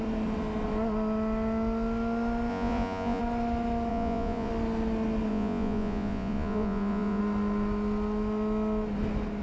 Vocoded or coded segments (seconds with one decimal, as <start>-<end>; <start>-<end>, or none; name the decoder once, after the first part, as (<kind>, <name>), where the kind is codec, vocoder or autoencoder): 2.5-3.2 (vocoder, Vocos); 3.9-4.5; 5.3-7.2